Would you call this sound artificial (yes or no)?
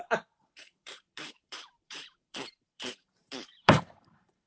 yes